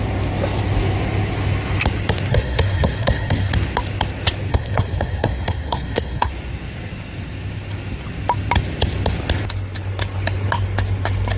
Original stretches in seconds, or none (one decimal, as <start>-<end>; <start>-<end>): 0.0-2.3; 3.5-4.5; 6.3-11.4